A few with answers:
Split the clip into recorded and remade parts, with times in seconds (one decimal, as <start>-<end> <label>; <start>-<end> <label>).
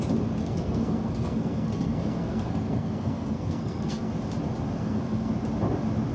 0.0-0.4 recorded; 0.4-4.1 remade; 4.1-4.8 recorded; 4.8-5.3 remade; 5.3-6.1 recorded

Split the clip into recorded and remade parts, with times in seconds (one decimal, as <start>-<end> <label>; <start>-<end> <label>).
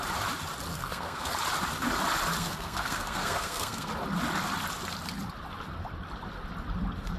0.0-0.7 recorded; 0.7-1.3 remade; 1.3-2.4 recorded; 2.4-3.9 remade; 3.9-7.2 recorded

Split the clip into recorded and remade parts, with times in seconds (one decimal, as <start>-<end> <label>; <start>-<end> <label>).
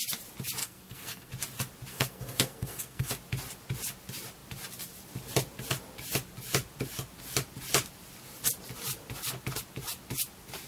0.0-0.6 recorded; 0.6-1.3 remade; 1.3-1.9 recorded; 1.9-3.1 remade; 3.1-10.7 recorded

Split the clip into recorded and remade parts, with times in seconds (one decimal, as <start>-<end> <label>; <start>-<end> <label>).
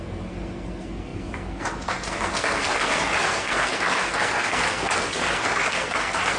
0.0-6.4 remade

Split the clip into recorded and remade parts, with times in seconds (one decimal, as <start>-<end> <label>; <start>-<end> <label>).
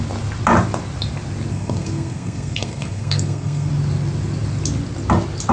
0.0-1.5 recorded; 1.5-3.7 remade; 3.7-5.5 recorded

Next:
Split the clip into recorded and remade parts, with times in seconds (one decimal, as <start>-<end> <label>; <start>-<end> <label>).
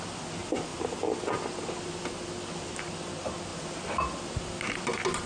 0.0-5.3 recorded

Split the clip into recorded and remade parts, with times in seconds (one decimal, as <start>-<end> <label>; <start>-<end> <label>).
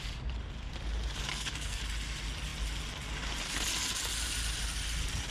0.0-1.3 recorded; 1.3-1.8 remade; 1.8-5.3 recorded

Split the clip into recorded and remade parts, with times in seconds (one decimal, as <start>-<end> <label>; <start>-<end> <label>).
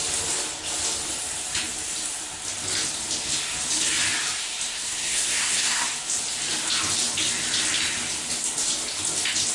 0.0-4.7 recorded; 4.7-5.8 remade; 5.8-9.5 recorded